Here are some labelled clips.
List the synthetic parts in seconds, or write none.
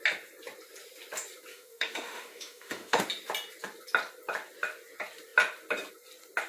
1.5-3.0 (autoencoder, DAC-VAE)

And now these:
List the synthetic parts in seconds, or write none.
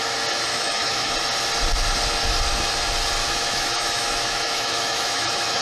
0.5-1.1 (autoencoder, DAC-VAE); 3.2-5.6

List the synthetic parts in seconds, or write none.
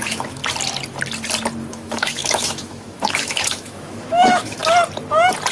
0.0-0.4 (autoencoder, DAC-VAE); 1.7-4.6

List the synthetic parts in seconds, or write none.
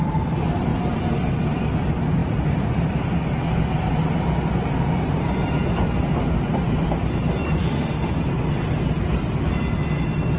7.6-8.1 (autoencoder, DAC-VAE)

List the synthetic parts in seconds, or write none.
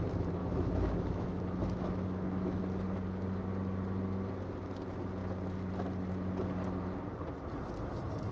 0.4-2.6 (autoencoder, DAC-VAE)